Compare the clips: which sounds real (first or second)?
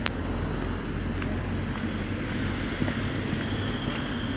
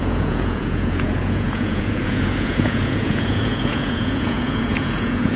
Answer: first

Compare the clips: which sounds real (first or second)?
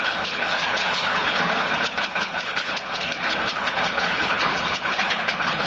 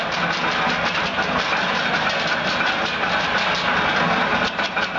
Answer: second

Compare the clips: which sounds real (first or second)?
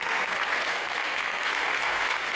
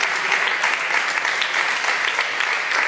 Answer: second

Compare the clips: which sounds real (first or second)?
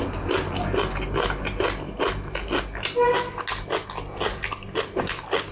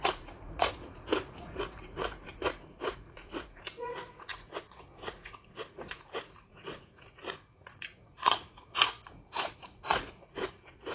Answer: first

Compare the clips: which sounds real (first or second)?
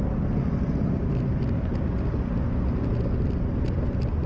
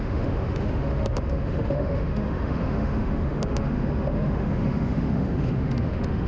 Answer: first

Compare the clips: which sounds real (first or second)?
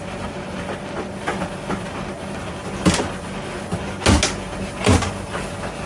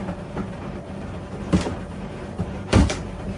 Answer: first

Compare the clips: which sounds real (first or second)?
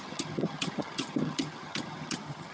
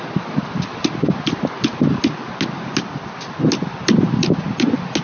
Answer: second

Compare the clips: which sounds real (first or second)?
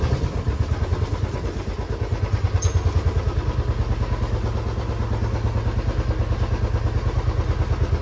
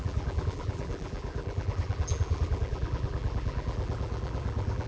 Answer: first